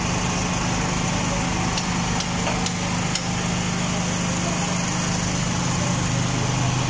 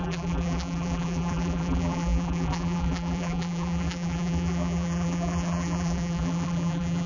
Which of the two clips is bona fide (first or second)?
first